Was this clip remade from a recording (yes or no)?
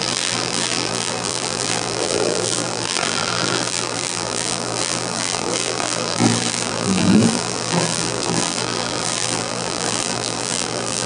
yes